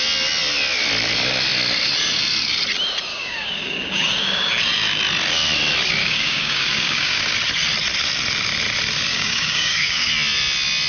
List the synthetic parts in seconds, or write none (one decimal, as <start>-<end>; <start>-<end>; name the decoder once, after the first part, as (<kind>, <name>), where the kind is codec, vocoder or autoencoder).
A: 3.1-4.5 (codec, DAC); 6.0-7.2; 9.1-10.1